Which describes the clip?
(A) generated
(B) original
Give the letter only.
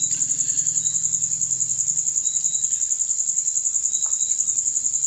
B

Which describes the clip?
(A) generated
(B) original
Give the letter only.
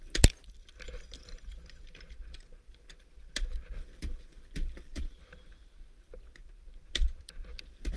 A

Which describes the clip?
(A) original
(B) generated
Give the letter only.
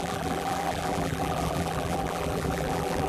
B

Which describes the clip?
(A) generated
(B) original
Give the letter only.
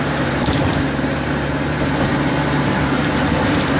A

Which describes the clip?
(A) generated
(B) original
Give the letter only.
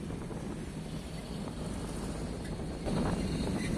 B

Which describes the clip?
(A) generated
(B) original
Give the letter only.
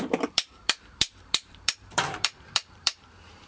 A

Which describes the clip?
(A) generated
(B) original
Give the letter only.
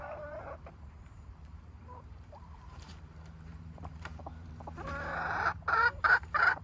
A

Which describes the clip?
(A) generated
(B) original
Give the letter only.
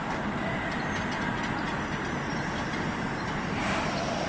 B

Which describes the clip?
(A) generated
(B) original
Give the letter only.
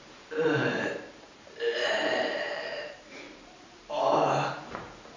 A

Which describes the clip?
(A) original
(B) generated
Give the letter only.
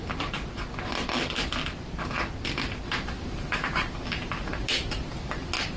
A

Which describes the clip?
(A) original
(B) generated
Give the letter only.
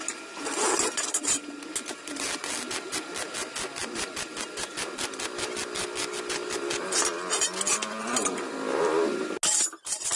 A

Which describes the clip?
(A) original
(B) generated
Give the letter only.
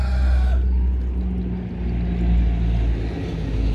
A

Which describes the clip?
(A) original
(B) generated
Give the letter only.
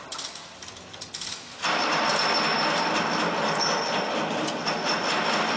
A